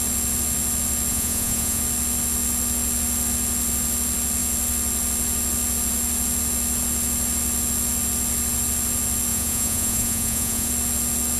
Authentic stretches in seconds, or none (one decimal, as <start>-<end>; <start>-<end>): 0.0-1.1; 1.8-9.3; 10.7-11.4